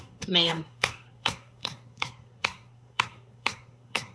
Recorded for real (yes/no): no